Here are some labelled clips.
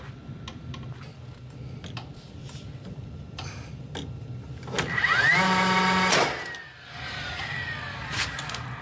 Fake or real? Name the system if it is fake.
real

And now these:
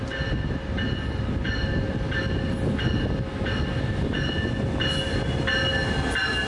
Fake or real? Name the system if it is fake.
real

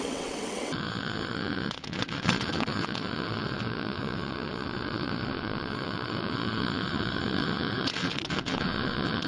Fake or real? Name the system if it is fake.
fake, vocoder, WaveNeXt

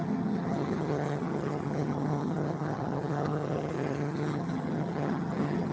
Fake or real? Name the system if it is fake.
fake, vocoder, HiFi-GAN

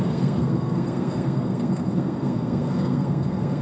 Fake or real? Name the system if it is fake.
fake, codec, SNAC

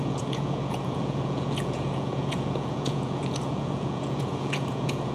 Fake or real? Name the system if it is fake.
fake, vocoder, Vocos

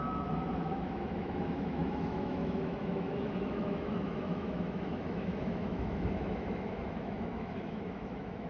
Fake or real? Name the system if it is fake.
fake, autoencoder, DAC-VAE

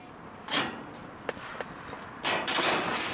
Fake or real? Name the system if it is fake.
real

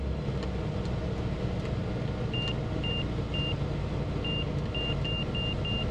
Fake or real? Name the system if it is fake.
real